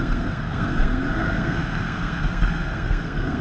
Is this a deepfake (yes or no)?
yes